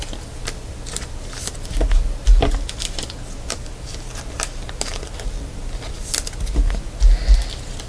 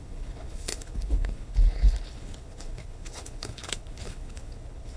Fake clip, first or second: second